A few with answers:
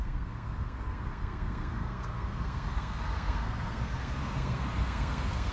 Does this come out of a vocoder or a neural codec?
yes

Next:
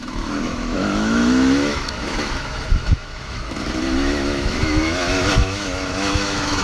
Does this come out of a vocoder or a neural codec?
yes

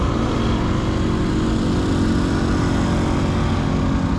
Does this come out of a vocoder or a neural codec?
no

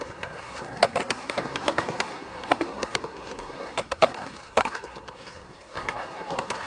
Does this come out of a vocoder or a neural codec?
yes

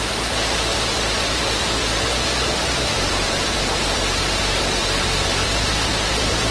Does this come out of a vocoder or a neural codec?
yes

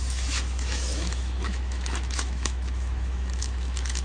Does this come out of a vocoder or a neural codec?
yes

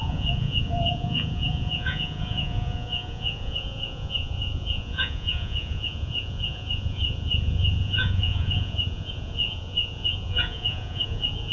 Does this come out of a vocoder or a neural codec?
yes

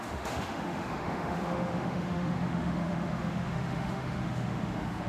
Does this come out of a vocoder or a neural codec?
yes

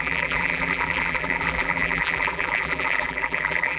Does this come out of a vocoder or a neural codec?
yes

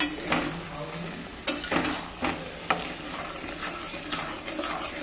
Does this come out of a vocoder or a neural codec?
no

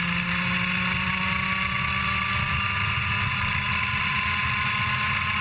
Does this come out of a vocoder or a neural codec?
no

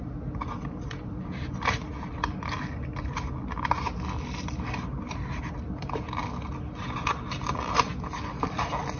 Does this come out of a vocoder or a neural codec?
no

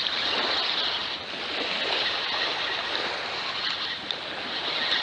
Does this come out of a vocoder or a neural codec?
no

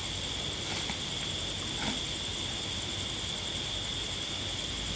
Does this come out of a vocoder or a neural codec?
no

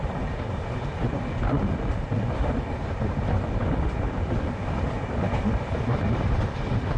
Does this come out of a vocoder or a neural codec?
no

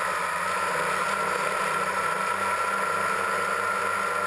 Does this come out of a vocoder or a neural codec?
no